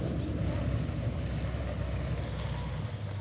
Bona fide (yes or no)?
yes